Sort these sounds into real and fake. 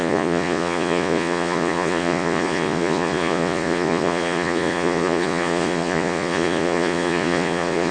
fake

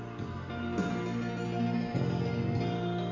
real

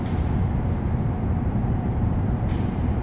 fake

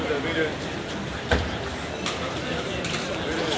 real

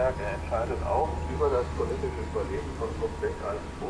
real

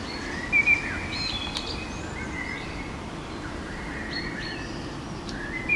real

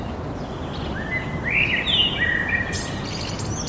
real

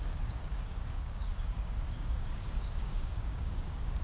fake